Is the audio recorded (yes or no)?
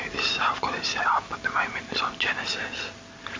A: yes